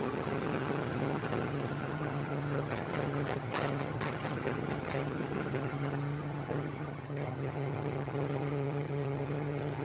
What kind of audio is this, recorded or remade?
remade